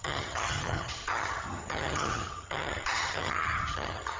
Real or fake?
fake